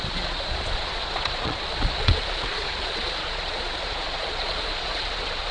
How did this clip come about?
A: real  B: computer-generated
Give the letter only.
B